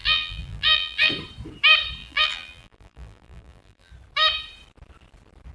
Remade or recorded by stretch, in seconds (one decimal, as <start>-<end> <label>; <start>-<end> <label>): 0.0-1.1 remade; 1.1-2.0 recorded; 2.0-3.9 remade; 3.9-5.5 recorded